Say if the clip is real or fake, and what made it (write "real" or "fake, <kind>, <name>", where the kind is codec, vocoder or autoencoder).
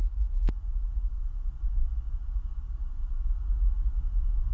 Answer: real